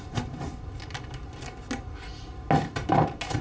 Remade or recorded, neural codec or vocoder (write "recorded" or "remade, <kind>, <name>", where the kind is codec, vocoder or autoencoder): recorded